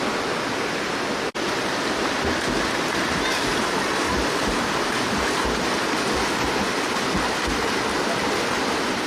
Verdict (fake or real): real